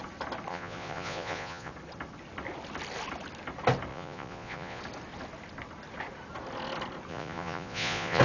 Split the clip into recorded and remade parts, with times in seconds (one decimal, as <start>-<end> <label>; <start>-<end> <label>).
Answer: 0.0-0.5 recorded; 0.5-1.7 remade; 1.7-3.9 recorded; 3.9-4.8 remade; 4.8-7.1 recorded; 7.1-8.2 remade